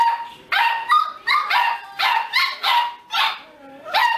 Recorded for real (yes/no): no